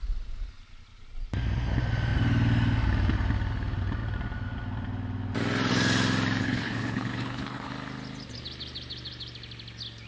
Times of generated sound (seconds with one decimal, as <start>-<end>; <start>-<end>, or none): 6.4-7.7